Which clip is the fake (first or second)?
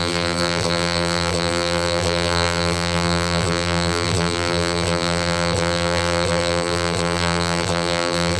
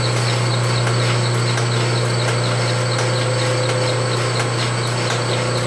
first